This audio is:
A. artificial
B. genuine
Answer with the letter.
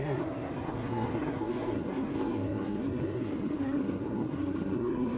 A